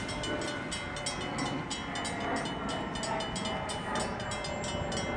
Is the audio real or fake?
real